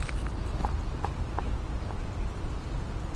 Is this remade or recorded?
recorded